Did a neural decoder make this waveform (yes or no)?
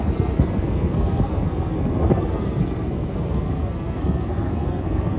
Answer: yes